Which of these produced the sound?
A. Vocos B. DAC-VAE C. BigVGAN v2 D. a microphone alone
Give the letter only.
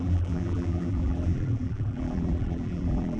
C